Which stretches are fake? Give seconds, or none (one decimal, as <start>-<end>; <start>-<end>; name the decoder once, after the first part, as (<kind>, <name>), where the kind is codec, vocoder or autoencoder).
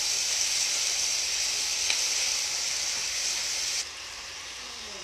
none